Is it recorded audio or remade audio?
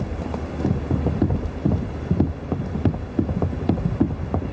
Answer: recorded